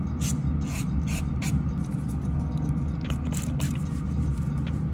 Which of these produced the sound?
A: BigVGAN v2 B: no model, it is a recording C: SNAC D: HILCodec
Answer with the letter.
B